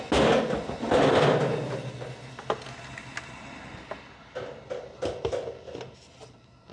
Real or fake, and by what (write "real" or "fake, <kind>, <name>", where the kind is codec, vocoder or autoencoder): real